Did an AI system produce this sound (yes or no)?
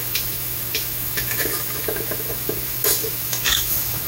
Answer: yes